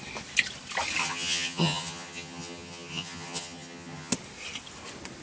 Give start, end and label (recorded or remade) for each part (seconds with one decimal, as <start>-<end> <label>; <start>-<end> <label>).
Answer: 0.0-1.0 recorded; 1.0-4.1 remade; 4.1-5.2 recorded